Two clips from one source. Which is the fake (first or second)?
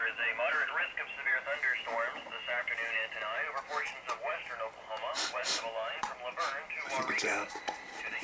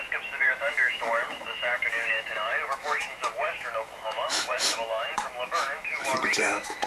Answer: second